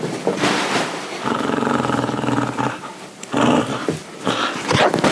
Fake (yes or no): yes